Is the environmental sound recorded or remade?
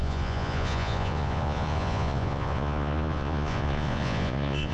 remade